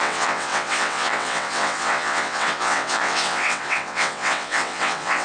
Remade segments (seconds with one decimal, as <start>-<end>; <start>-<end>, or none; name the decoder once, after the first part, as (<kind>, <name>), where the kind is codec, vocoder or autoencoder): 0.0-5.2 (vocoder, WaveNeXt)